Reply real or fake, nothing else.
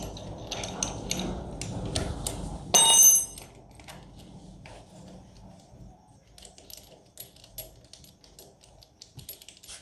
real